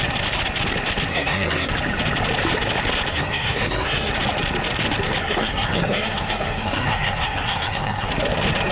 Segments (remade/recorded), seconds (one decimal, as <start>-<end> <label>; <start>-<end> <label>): 0.0-1.1 recorded; 1.1-1.7 remade; 1.7-3.1 recorded; 3.1-4.1 remade; 4.1-5.2 recorded; 5.2-8.1 remade; 8.1-8.7 recorded